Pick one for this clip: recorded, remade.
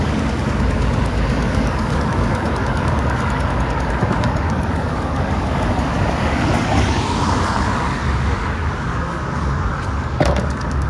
remade